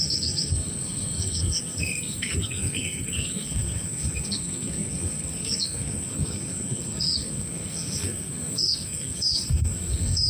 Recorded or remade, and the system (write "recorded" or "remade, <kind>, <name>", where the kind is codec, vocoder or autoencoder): remade, codec, SNAC